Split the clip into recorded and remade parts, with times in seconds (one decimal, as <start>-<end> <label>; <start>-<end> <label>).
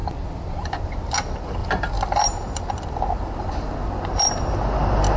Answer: 0.0-0.8 remade; 0.8-1.6 recorded; 1.6-4.6 remade; 4.6-5.2 recorded